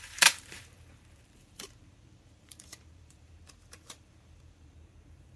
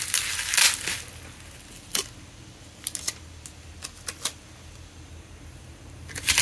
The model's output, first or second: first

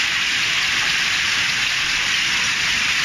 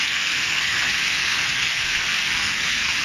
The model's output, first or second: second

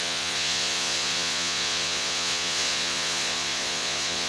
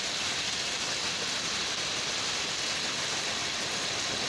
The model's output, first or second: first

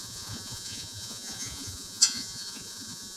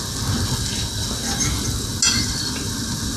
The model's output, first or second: first